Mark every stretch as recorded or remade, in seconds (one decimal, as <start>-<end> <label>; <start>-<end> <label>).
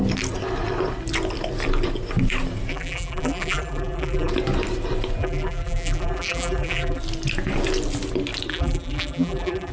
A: 0.0-2.7 recorded; 2.7-4.3 remade; 4.3-5.2 recorded; 5.2-7.0 remade; 7.0-8.5 recorded; 8.5-9.7 remade